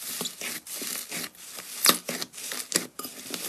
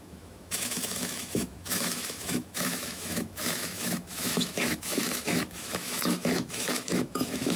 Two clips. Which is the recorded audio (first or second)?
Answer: first